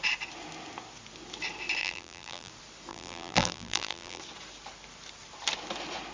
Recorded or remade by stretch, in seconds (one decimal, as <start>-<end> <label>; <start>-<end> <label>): 0.0-1.8 recorded; 1.8-2.5 remade; 2.5-2.9 recorded; 2.9-4.2 remade; 4.2-6.1 recorded